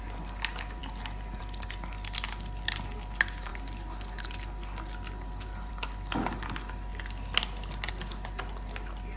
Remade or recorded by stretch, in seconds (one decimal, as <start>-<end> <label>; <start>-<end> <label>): 0.0-9.2 recorded